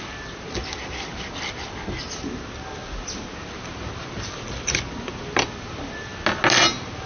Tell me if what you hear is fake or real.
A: real